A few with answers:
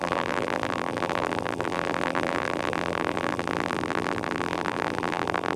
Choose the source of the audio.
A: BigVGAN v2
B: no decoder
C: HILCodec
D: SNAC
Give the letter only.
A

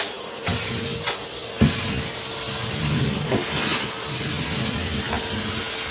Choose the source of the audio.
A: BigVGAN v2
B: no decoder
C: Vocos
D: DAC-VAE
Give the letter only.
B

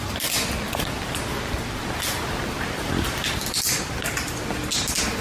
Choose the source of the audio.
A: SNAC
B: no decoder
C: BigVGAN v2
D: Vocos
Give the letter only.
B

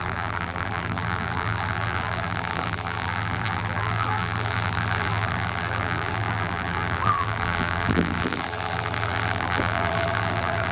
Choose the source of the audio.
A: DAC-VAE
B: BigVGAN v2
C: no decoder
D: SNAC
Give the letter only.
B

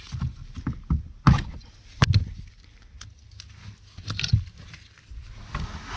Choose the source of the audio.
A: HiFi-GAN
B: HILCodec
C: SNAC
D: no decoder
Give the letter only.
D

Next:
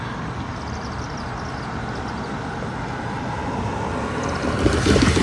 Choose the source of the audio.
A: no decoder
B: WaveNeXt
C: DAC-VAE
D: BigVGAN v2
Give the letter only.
A